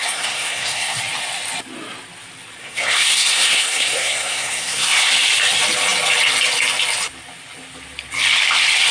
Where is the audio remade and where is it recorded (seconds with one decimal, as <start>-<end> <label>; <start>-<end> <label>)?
0.0-1.0 remade; 1.0-2.6 recorded; 2.6-5.1 remade; 5.1-8.9 recorded